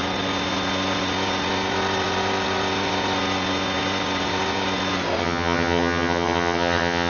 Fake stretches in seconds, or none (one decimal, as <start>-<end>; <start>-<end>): 5.2-7.1